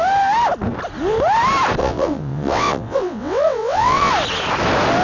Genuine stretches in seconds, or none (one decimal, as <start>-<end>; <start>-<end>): 0.0-1.8; 4.1-5.0